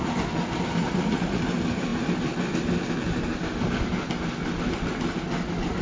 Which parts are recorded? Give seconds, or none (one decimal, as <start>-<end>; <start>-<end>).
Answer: 0.0-0.8; 1.4-5.8

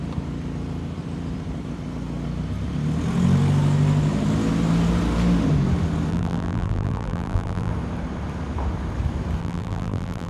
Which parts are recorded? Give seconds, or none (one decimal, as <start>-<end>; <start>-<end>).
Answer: 0.0-6.1; 7.7-9.4

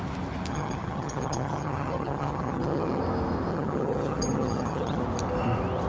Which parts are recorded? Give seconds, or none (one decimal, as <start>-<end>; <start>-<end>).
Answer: 0.0-0.5; 3.0-3.5; 5.0-5.9

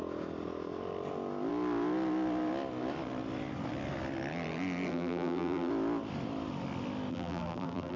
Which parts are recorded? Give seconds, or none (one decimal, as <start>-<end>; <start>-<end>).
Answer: 0.0-4.9; 5.7-7.1

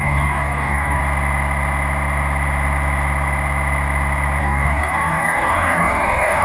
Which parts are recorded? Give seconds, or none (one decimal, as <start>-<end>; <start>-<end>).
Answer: 1.0-4.4

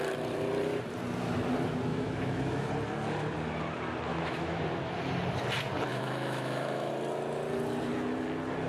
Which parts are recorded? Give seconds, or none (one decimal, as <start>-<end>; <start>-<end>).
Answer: 0.0-1.9; 2.7-4.1; 4.6-5.9; 6.9-8.7

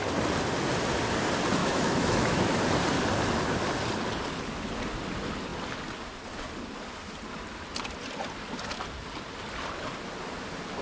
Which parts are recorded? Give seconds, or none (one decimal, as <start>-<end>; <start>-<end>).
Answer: 0.0-1.6; 2.6-10.8

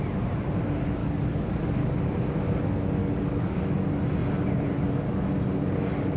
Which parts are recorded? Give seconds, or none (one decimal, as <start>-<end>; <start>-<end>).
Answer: 0.0-1.0; 2.1-3.0; 3.6-6.2